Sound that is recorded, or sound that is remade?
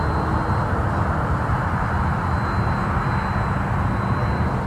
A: recorded